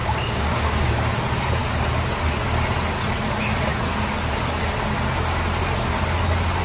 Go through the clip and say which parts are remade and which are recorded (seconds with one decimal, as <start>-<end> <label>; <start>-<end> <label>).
0.0-0.9 remade; 0.9-6.6 recorded